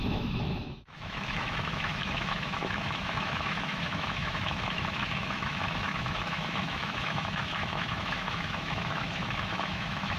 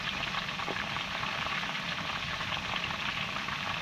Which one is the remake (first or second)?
first